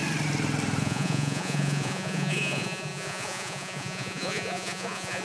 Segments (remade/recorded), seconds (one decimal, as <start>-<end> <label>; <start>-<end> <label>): 0.0-0.8 recorded; 0.8-5.2 remade